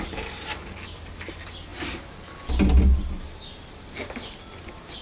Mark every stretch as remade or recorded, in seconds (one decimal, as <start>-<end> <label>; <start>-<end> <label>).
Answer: 0.0-1.7 recorded; 1.7-5.0 remade